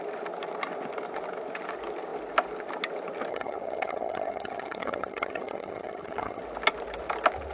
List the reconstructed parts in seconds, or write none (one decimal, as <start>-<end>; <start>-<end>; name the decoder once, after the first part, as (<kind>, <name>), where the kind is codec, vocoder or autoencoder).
3.3-6.4 (vocoder, HiFi-GAN)